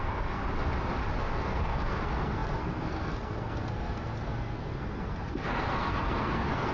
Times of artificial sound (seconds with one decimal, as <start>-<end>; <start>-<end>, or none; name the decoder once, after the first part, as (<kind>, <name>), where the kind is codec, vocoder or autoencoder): 0.0-0.4 (codec, SNAC); 1.2-6.7